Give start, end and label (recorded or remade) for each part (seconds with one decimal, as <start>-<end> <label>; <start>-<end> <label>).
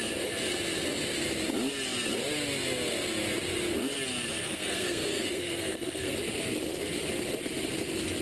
0.0-4.4 recorded; 4.4-6.2 remade; 6.2-8.2 recorded